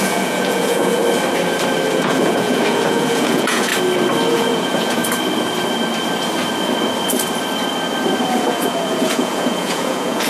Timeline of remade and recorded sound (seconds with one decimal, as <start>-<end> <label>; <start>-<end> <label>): 0.0-1.0 remade; 1.0-1.9 recorded; 1.9-3.7 remade; 3.7-4.3 recorded; 4.3-5.0 remade; 5.0-8.3 recorded; 8.3-10.3 remade

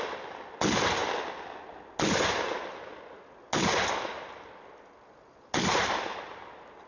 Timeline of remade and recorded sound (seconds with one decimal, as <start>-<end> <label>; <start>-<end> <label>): 0.0-6.9 recorded

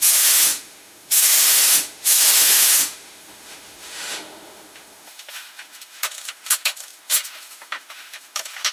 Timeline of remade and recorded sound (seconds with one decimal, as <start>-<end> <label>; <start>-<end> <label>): 0.0-8.7 remade

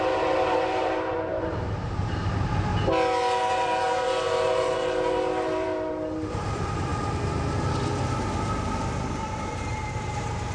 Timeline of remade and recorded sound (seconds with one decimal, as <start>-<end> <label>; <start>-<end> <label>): 0.0-2.7 remade; 2.7-3.5 recorded; 3.5-6.9 remade; 6.9-9.1 recorded; 9.1-10.5 remade